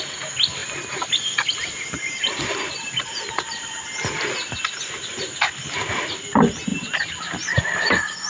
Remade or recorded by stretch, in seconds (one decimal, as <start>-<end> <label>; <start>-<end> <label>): 0.0-8.3 recorded